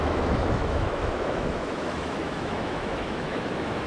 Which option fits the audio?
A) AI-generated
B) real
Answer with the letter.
A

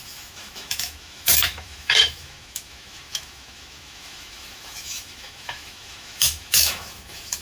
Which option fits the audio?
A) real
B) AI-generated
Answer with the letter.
B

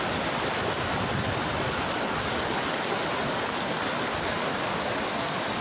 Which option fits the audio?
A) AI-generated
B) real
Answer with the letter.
B